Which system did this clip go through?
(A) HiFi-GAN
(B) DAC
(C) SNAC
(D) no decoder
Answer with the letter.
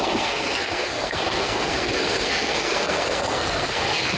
C